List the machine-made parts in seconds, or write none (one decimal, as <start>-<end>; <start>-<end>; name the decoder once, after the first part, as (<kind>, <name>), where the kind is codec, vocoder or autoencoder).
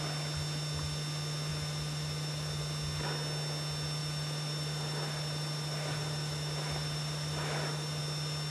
1.5-2.6 (vocoder, BigVGAN v2); 4.0-8.0